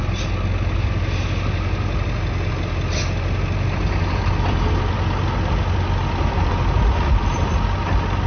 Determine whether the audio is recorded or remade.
recorded